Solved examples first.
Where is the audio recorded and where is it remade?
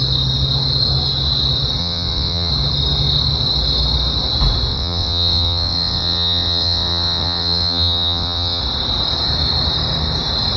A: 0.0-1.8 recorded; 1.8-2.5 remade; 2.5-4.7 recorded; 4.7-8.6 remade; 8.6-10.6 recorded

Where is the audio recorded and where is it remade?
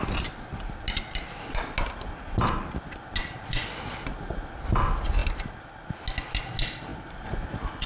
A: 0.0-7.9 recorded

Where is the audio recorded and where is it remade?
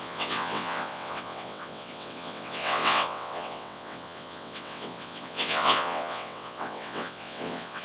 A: 0.0-7.8 remade